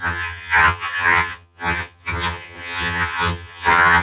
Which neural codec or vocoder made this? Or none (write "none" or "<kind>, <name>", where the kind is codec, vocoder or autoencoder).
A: vocoder, HiFi-GAN